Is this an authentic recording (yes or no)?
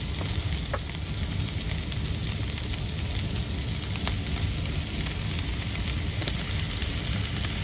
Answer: yes